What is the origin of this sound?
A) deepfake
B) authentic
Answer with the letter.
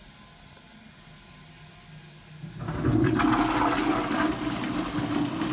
B